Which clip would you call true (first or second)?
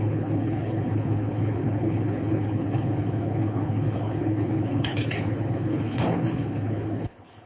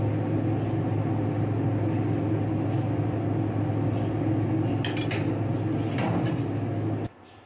second